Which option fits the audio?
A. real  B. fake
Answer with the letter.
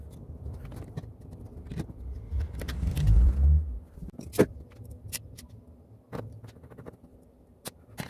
A